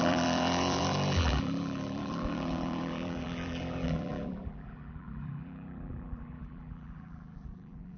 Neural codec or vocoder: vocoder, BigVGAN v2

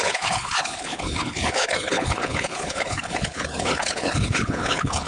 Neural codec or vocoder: codec, HILCodec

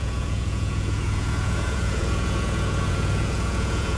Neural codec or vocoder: vocoder, Vocos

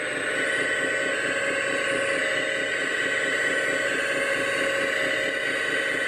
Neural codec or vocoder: none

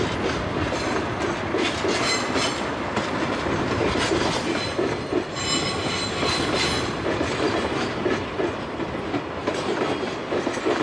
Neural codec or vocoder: none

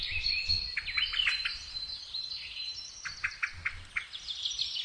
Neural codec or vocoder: none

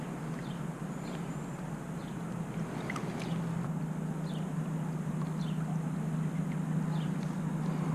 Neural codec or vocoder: none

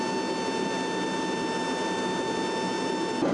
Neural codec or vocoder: none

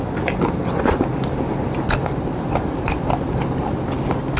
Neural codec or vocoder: none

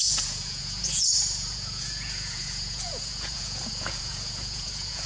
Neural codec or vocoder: vocoder, Vocos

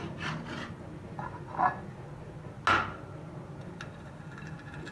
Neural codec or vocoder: none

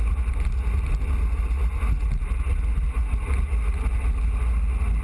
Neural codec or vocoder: none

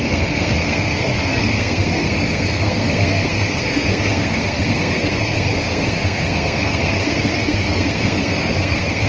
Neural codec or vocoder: codec, SNAC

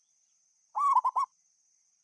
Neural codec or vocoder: none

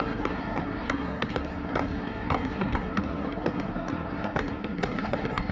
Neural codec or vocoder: codec, SNAC